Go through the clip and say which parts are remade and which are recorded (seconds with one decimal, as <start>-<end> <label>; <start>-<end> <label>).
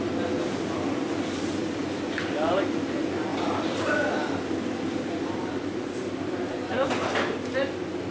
0.0-8.1 recorded